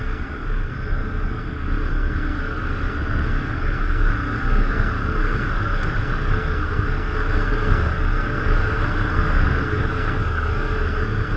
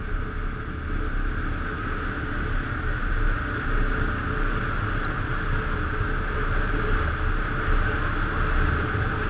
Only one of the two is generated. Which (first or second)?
first